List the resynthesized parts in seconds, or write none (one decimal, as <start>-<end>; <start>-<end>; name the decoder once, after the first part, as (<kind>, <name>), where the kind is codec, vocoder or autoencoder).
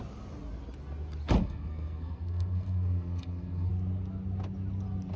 1.4-3.7 (codec, SNAC)